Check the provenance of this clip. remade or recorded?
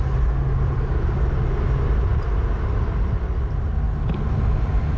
recorded